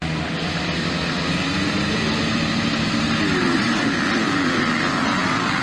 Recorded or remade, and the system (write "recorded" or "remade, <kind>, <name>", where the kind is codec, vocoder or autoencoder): remade, vocoder, BigVGAN v2